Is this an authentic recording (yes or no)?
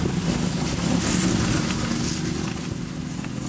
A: yes